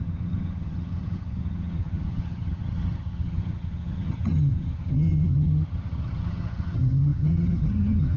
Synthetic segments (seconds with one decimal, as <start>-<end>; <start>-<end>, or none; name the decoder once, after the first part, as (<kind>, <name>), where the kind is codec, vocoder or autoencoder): 0.0-8.2 (vocoder, HiFi-GAN)